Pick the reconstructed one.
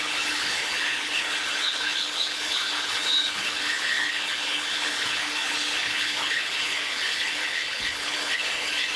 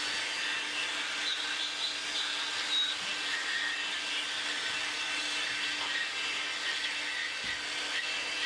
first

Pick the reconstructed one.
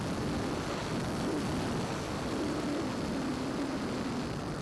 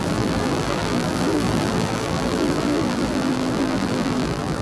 second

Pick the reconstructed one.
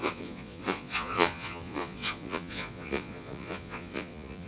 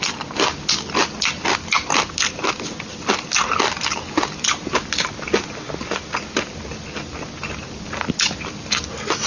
first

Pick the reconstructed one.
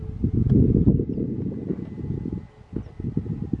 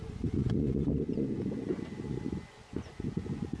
second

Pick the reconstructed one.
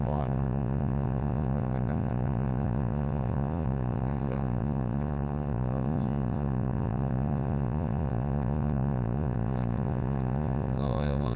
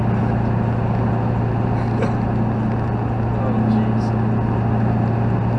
first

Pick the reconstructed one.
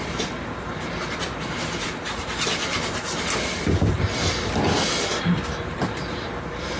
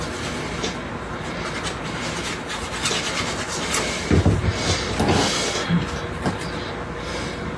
first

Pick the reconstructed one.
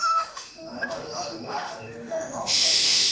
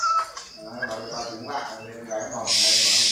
first